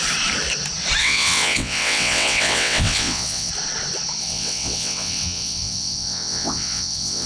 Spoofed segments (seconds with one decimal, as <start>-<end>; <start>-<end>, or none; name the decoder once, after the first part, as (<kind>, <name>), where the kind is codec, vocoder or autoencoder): 1.0-3.5 (vocoder, WaveNeXt); 4.2-7.3